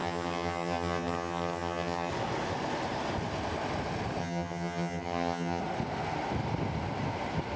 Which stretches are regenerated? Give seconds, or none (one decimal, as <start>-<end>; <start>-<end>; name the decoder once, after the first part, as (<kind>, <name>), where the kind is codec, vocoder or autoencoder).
0.0-2.1 (vocoder, HiFi-GAN); 4.2-5.6